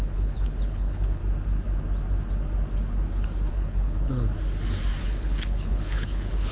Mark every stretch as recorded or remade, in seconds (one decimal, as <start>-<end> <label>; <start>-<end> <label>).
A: 0.0-1.2 remade; 1.2-3.5 recorded; 3.5-4.1 remade; 4.1-5.0 recorded; 5.0-6.5 remade